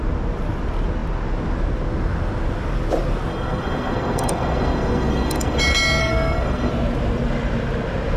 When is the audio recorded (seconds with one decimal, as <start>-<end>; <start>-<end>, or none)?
0.0-3.3; 5.6-6.0; 6.7-8.2

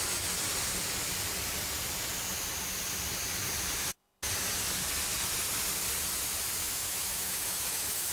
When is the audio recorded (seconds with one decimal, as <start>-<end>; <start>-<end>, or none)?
0.0-6.6

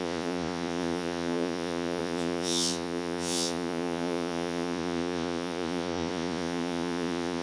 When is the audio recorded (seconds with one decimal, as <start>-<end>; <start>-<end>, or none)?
none

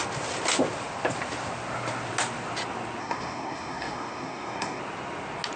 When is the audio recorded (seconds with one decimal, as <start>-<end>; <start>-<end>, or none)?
0.0-3.0; 4.8-5.6

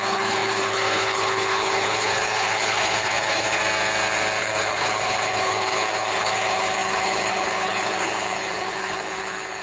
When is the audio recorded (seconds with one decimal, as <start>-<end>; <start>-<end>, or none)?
3.6-4.4

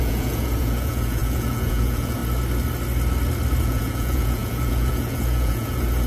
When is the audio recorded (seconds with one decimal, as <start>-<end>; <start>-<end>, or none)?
2.2-3.6